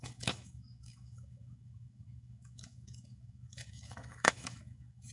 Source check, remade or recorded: remade